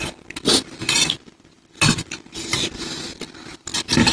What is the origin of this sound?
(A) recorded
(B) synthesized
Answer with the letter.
A